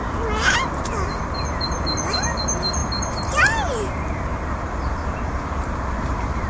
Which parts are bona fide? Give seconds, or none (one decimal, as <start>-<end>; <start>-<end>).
0.0-2.8